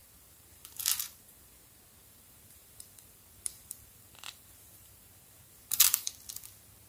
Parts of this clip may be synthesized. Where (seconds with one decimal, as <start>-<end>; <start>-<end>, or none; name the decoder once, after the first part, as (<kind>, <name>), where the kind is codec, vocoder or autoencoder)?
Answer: 0.0-1.5 (vocoder, BigVGAN v2); 2.0-6.1